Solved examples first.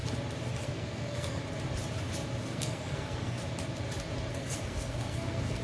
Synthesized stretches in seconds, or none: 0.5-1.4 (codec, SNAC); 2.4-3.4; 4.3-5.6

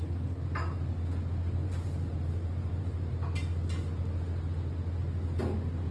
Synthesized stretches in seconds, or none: 1.6-3.1 (vocoder, BigVGAN v2)

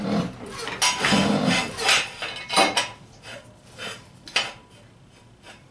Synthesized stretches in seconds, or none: none

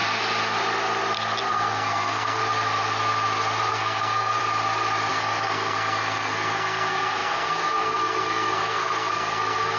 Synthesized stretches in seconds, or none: 1.5-2.4 (codec, SNAC); 3.7-4.4; 5.1-9.8

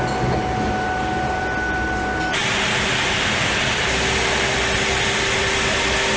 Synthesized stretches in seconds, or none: none

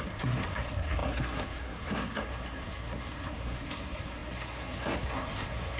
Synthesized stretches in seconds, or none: 0.0-5.8 (codec, SNAC)

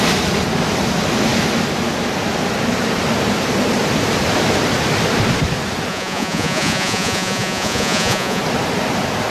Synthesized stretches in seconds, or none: 5.9-8.4 (vocoder, Vocos)

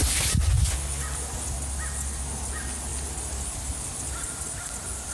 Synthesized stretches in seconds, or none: none